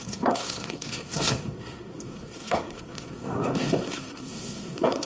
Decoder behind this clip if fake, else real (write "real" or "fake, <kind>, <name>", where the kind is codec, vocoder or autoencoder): fake, codec, SNAC